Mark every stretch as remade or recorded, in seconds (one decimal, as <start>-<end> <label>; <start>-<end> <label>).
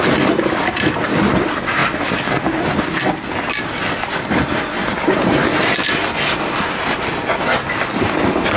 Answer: 0.0-8.6 recorded